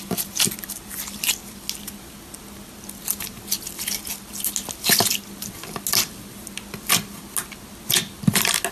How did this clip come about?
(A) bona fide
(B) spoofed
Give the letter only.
A